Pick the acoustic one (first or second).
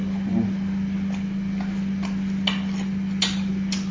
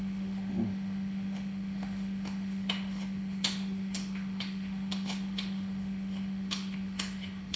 first